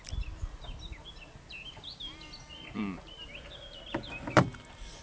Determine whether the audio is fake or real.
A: real